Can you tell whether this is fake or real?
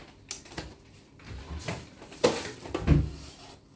real